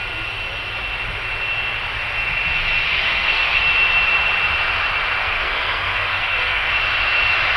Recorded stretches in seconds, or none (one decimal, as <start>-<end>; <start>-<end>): 0.0-2.9; 3.6-5.2; 6.7-7.6